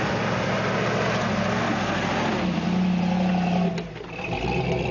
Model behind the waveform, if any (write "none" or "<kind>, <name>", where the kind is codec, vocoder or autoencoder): none